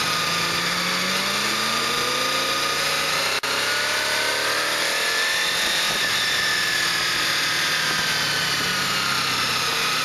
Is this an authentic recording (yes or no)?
yes